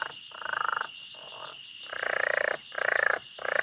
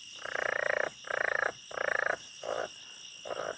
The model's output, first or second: first